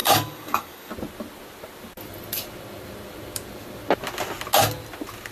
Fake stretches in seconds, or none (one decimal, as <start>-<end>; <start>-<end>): 0.0-0.9

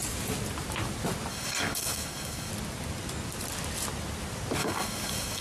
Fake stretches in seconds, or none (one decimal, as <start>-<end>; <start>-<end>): 1.3-2.5; 4.6-5.4

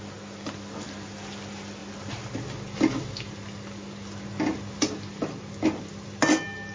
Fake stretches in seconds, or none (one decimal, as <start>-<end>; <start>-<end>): none

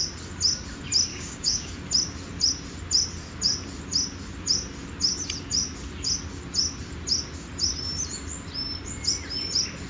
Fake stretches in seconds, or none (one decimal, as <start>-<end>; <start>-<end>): 1.1-1.7

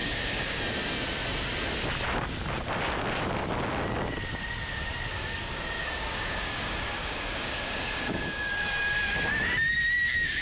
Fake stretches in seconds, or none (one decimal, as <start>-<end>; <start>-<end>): 0.0-0.6; 5.1-8.5

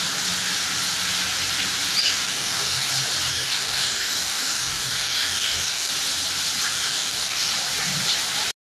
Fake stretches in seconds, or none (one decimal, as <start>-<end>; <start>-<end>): 2.0-2.9; 3.3-5.9; 6.7-7.5